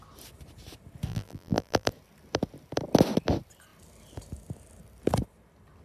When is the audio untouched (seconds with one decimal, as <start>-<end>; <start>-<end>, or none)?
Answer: 0.0-1.1; 1.9-5.8